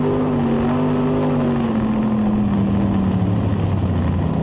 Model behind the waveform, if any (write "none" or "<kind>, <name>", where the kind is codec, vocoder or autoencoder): none